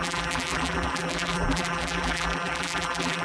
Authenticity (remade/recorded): remade